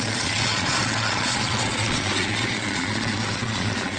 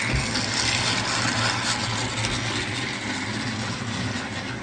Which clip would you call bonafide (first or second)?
second